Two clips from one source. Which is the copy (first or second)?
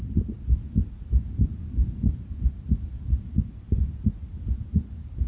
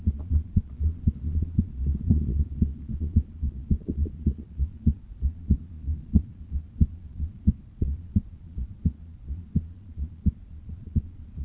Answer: second